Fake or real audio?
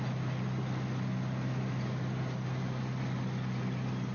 real